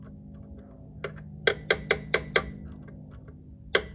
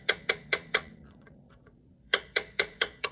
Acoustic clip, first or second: first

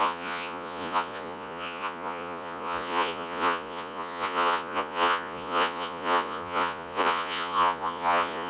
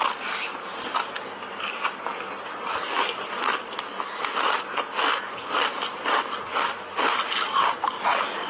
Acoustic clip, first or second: second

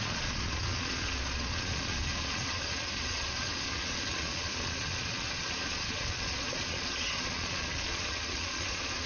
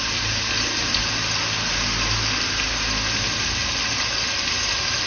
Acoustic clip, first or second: second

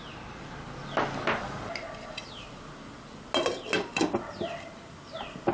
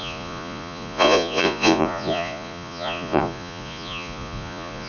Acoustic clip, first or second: first